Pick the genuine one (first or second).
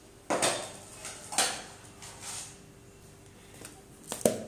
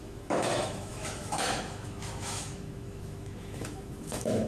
first